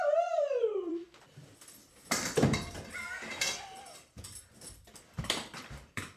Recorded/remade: remade